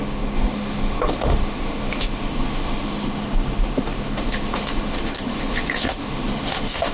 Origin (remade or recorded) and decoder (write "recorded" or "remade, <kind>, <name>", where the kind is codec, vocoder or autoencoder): remade, autoencoder, DAC-VAE